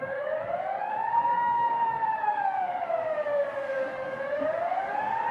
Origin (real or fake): fake